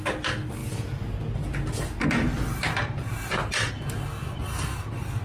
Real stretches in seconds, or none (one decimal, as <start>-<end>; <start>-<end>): 0.0-4.2; 4.8-5.2